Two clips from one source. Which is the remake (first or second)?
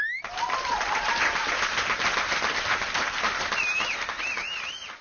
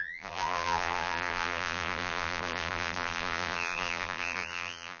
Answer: second